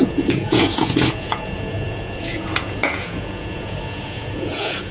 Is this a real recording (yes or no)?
no